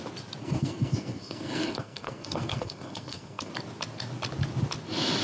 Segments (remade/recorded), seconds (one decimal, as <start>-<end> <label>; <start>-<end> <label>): 0.0-0.4 recorded; 0.4-3.5 remade; 3.5-5.2 recorded